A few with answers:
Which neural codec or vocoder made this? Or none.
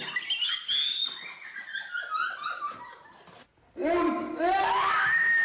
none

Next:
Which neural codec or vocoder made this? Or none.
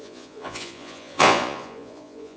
vocoder, Vocos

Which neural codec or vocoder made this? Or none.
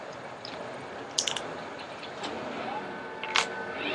none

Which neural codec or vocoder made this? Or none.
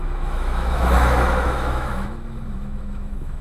autoencoder, DAC-VAE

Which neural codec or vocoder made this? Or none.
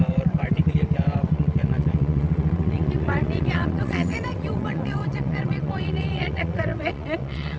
vocoder, WaveNeXt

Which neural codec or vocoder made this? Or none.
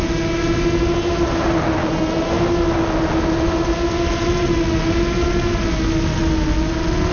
none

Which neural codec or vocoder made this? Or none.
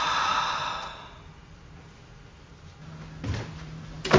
none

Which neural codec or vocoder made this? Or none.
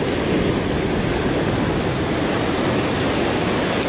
none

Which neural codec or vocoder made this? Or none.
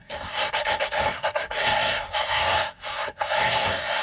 codec, SNAC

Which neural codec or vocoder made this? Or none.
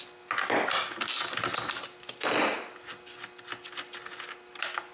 none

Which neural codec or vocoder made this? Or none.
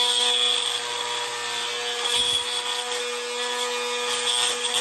none